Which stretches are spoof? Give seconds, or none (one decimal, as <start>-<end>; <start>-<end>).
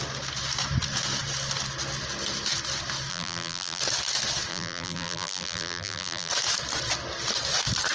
3.1-3.8; 4.5-6.3